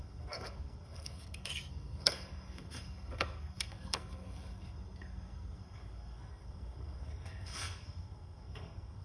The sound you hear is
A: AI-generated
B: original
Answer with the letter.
A